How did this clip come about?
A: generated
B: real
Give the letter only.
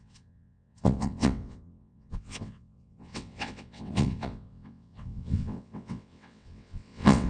A